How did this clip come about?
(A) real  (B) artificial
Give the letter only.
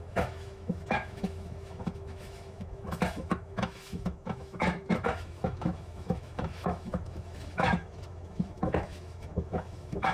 B